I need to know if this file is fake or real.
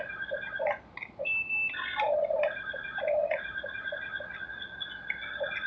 real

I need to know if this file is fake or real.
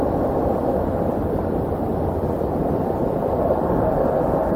real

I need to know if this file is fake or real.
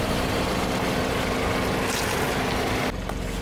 real